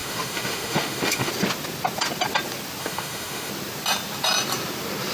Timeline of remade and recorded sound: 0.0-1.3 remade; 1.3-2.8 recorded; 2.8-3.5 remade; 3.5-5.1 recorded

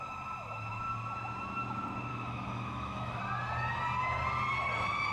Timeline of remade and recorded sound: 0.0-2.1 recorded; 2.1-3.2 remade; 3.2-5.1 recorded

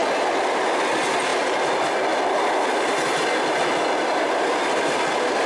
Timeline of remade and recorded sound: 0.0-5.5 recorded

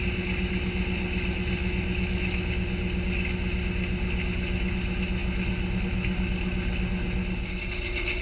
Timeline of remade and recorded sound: 0.0-1.6 recorded; 1.6-2.5 remade; 2.5-8.2 recorded